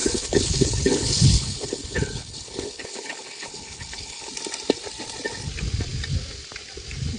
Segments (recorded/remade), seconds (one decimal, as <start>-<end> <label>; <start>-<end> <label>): 0.0-4.3 remade; 4.3-7.2 recorded